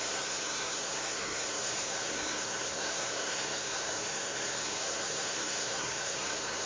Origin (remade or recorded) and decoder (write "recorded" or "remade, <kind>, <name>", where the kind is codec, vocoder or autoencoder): remade, codec, SNAC